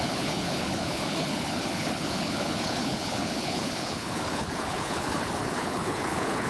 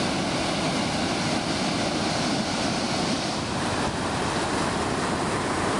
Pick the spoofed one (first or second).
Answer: first